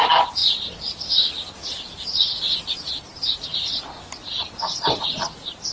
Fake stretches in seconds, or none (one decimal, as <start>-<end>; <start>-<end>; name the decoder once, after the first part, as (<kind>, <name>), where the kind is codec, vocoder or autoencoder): 4.2-5.0 (vocoder, BigVGAN v2)